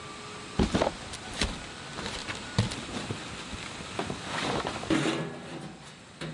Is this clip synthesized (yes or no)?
no